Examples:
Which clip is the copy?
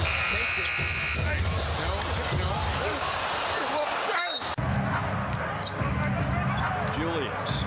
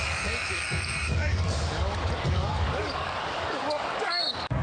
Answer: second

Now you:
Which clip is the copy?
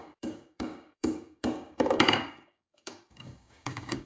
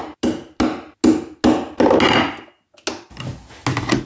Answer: first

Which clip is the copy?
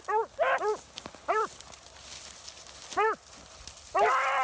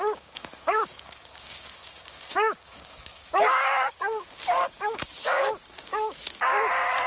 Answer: second